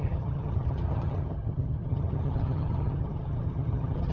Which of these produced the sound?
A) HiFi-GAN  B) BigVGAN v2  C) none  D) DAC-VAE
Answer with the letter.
A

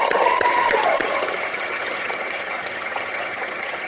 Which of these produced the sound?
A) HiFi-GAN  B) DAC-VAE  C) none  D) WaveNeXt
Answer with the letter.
A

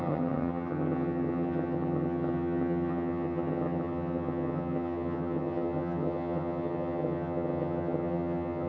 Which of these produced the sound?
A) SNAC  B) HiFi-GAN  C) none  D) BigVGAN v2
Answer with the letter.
B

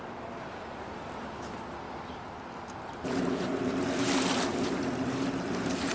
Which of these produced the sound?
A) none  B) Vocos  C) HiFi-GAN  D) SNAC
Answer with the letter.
A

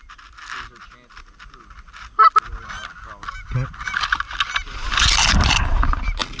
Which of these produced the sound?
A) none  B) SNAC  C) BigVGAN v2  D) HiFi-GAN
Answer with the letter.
A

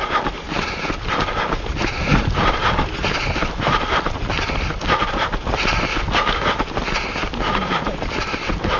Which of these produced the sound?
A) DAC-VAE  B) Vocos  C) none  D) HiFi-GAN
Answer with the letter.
C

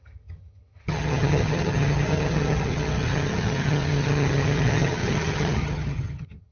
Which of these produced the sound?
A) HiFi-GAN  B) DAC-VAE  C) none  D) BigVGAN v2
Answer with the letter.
A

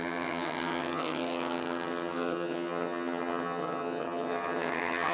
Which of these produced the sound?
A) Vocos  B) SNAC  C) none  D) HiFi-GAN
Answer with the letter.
D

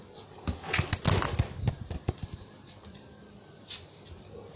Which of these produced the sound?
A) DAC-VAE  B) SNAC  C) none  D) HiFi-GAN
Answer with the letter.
C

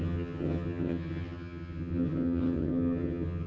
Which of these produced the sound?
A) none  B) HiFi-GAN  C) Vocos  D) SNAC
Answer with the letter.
B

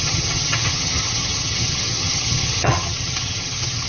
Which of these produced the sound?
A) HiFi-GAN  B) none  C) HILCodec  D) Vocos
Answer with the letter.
A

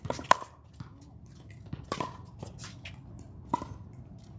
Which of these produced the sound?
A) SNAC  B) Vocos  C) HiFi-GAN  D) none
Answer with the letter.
D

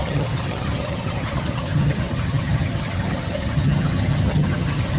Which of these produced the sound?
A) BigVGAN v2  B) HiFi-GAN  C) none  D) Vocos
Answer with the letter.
B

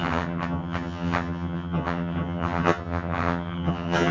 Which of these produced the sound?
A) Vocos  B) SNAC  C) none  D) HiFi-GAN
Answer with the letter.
D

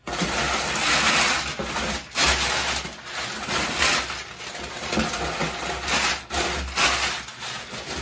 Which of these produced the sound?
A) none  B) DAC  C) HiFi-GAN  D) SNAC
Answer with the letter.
A